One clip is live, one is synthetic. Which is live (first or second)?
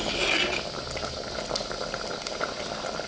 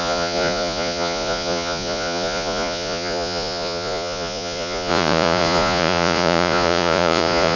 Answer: first